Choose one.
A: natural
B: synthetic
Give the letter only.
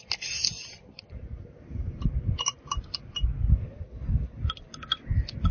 A